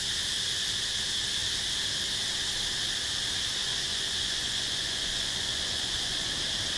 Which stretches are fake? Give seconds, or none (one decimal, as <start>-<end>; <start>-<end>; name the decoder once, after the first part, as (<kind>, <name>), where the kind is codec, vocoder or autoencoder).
3.6-6.3 (vocoder, Vocos)